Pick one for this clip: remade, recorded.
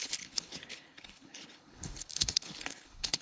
remade